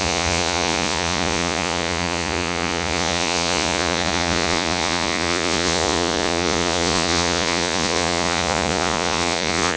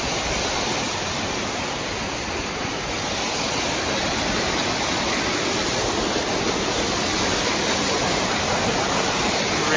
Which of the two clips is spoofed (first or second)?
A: first